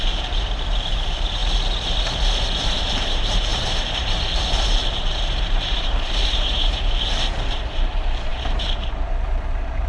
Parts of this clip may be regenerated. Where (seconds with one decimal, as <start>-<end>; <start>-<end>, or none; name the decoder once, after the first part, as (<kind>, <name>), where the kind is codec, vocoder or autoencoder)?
0.0-1.4 (vocoder, BigVGAN v2); 2.6-9.9